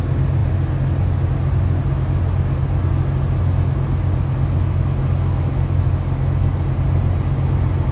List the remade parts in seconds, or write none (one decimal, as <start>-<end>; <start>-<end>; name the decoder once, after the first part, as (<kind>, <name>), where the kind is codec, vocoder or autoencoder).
none